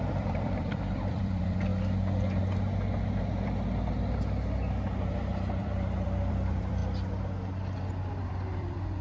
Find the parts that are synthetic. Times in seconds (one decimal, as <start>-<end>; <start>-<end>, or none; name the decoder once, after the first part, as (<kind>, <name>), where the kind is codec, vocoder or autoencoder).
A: 0.0-1.7 (vocoder, BigVGAN v2); 5.6-6.8; 7.9-9.0